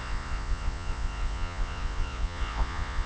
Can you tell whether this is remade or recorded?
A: remade